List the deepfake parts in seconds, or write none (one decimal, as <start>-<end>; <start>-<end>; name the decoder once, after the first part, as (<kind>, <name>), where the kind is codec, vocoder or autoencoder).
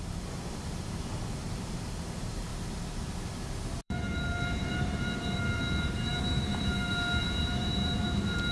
0.0-2.5 (vocoder, BigVGAN v2); 3.8-8.5